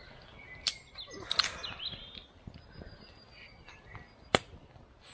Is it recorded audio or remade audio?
recorded